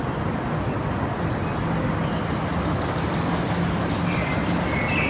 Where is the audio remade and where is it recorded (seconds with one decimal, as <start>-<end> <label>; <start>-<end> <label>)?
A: 0.0-5.1 recorded

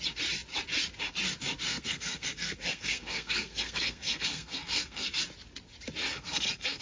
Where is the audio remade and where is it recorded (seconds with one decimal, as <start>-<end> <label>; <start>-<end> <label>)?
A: 0.0-1.7 recorded; 1.7-5.2 remade; 5.2-6.1 recorded; 6.1-6.8 remade

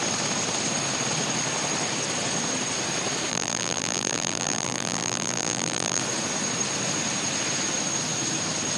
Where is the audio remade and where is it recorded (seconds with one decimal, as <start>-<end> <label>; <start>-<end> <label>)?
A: 0.0-3.3 recorded; 3.3-6.0 remade; 6.0-8.8 recorded